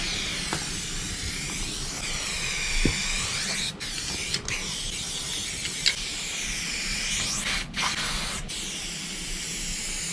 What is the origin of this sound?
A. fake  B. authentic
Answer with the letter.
B